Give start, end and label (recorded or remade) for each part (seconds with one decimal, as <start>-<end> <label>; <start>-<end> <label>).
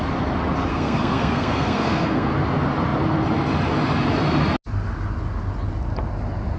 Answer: 0.0-0.7 recorded; 0.7-2.3 remade; 2.3-6.6 recorded